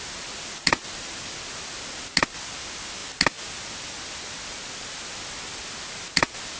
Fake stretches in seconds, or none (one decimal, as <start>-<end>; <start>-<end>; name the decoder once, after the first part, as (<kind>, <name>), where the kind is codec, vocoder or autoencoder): none